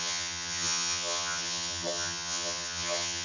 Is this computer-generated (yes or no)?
yes